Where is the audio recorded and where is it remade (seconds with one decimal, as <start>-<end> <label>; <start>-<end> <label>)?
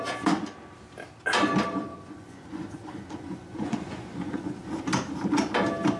0.0-1.9 recorded; 1.9-4.5 remade; 4.5-6.0 recorded